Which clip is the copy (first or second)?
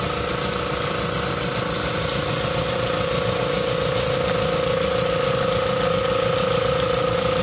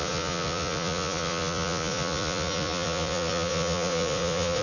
second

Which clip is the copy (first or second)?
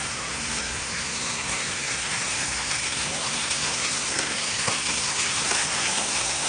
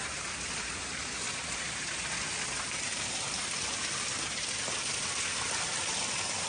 first